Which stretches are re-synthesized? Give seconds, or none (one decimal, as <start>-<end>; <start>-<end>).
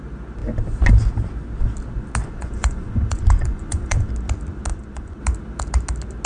2.2-4.1; 4.7-5.2